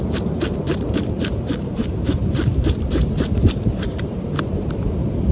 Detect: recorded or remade remade